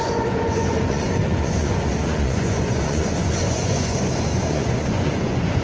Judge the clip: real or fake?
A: fake